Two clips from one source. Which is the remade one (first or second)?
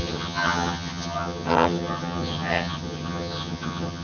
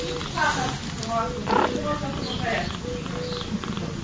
first